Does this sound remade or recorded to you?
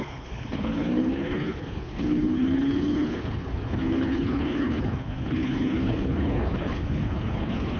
remade